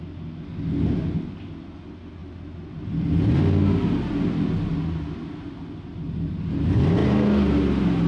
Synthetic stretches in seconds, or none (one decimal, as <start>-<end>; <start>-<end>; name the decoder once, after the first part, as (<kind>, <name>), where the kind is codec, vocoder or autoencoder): none